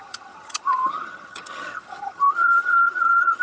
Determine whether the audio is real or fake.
fake